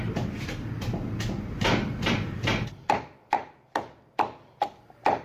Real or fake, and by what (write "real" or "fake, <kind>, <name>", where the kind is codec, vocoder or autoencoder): real